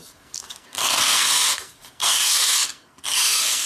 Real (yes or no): no